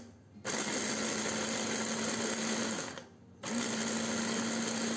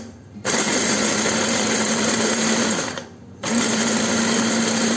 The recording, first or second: first